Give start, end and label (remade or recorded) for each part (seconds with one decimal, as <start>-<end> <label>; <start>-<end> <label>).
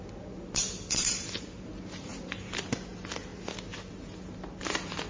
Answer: 0.0-5.1 recorded